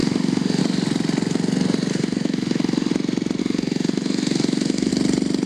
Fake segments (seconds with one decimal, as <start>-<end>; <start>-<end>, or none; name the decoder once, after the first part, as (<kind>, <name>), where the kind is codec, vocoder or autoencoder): 0.0-0.6 (autoencoder, DAC-VAE); 1.9-2.9; 3.4-4.9